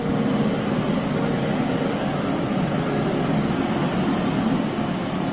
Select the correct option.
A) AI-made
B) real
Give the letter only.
B